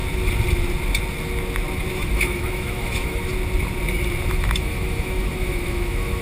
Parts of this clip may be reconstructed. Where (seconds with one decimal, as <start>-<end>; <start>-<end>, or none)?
1.9-3.3; 4.3-6.2